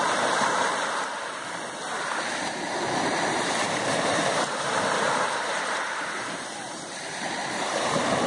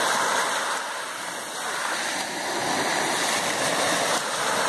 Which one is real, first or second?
second